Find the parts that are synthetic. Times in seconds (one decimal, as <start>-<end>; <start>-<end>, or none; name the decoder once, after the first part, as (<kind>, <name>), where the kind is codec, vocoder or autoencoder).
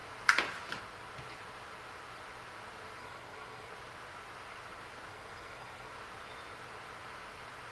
3.0-3.7 (codec, SNAC); 5.1-5.9